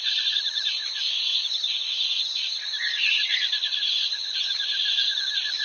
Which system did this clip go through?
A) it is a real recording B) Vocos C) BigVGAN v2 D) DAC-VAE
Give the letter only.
B